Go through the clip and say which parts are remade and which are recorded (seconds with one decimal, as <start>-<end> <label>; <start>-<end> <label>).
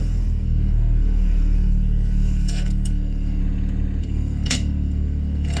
0.0-3.4 remade; 3.4-4.0 recorded; 4.0-5.6 remade